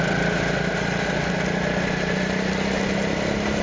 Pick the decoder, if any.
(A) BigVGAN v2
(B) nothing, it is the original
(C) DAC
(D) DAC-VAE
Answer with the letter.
B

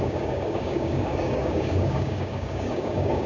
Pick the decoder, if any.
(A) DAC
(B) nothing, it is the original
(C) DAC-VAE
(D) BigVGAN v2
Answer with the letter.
A